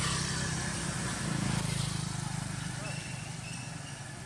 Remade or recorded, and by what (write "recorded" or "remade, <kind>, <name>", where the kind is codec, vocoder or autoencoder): recorded